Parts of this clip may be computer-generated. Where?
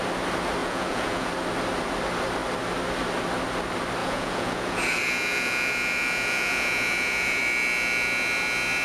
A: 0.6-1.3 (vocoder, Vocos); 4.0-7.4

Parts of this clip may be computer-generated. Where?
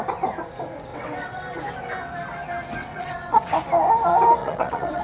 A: 0.9-1.4 (vocoder, WaveNeXt); 2.8-3.6; 4.4-5.0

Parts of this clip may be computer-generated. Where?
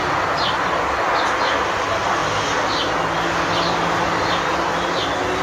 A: none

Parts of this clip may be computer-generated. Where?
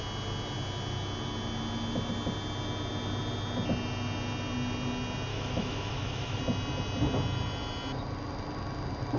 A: 5.3-6.4 (autoencoder, DAC-VAE)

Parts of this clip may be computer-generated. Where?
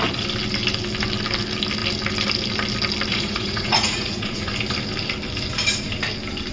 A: 3.1-4.5 (vocoder, Vocos)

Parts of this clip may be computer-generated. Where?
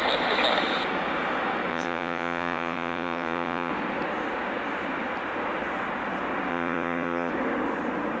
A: 1.7-3.7 (vocoder, HiFi-GAN); 6.5-7.3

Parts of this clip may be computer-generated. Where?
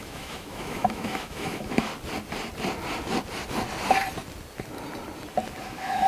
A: 0.0-1.9 (autoencoder, DAC-VAE); 5.6-6.1